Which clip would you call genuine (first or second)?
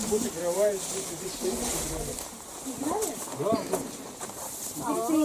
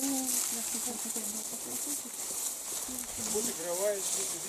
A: second